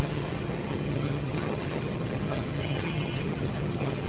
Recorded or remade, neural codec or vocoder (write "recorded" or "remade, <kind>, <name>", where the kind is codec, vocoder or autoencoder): remade, vocoder, HiFi-GAN